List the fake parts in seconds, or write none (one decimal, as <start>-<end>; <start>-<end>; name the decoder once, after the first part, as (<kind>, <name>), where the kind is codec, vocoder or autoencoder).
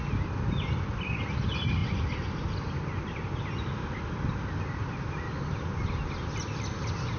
none